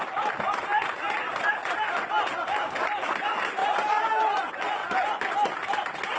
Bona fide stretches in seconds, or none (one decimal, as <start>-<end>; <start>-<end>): 0.0-6.2